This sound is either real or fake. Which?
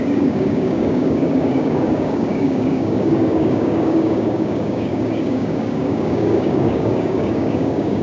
fake